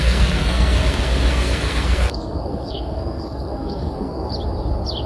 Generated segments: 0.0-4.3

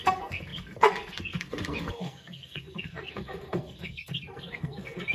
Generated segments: 0.0-5.1

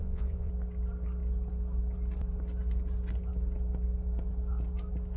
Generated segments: 0.0-0.5

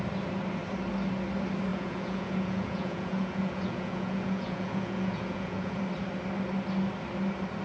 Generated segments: 1.7-5.8

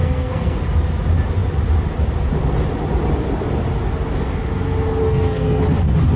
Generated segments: 0.0-0.6; 5.0-5.6

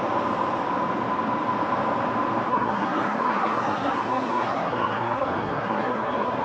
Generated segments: 2.5-6.4

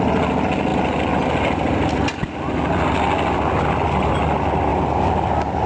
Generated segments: none

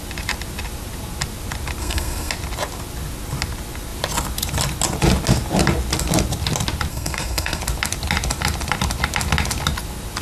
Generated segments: 1.8-2.3; 6.9-7.6